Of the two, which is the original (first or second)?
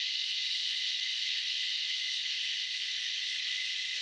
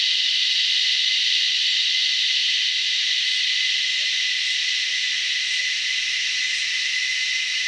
second